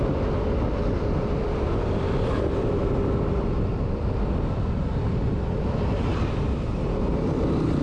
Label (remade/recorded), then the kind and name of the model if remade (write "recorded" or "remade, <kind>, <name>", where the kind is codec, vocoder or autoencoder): recorded